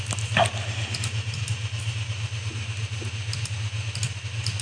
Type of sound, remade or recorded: recorded